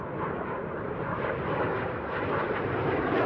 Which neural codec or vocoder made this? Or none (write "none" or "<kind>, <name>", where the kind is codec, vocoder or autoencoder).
none